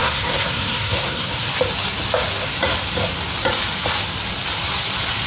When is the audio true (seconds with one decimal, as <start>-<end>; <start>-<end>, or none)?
1.5-5.3